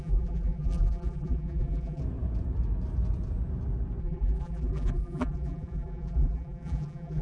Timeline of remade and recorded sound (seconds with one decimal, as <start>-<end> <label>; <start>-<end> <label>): 0.0-2.0 remade; 2.0-4.0 recorded; 4.0-7.2 remade